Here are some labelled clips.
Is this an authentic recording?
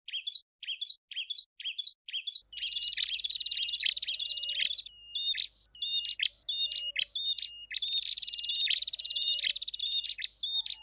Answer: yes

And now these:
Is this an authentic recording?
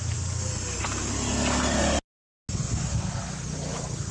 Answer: yes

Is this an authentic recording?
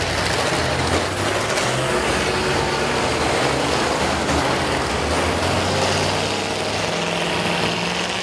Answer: yes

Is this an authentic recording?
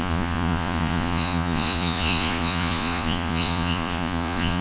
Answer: no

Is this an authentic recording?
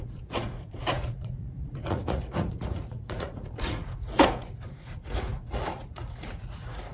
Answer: no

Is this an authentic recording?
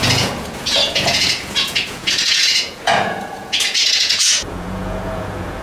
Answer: no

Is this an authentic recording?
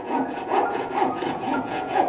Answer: no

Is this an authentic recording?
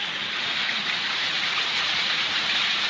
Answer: no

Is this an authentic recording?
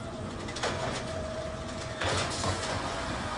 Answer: no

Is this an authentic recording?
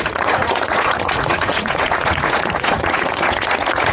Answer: no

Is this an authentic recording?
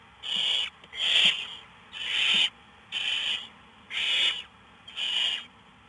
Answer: yes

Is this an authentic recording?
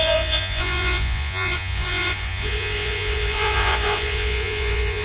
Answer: no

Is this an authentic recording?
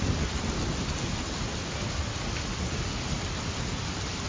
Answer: yes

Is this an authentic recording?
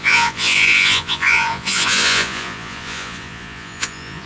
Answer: no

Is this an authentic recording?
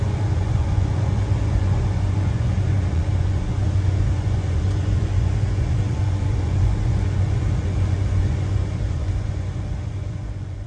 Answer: no